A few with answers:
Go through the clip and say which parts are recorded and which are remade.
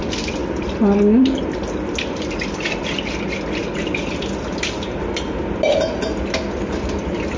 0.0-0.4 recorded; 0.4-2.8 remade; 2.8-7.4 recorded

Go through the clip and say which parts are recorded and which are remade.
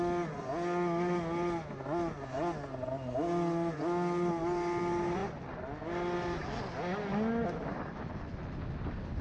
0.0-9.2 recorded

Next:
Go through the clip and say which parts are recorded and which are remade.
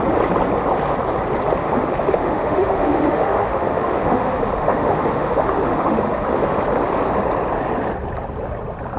0.0-1.6 recorded; 1.6-6.6 remade; 6.6-9.0 recorded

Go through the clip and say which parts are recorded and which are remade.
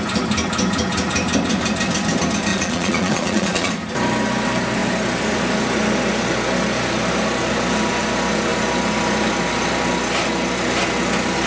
0.0-2.5 recorded; 2.5-3.7 remade; 3.7-11.5 recorded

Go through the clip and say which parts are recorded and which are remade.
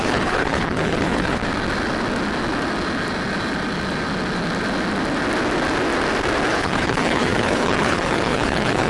0.0-1.4 remade; 1.4-6.5 recorded; 6.5-8.9 remade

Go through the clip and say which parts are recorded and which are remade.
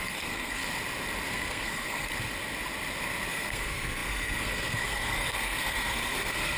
0.0-0.6 remade; 0.6-1.3 recorded; 1.3-2.1 remade; 2.1-3.3 recorded; 3.3-6.6 remade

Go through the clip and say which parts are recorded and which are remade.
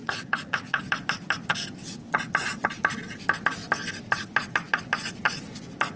0.0-6.0 recorded